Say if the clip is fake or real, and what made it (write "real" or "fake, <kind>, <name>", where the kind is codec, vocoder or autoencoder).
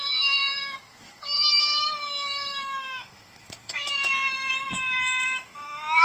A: fake, autoencoder, DAC-VAE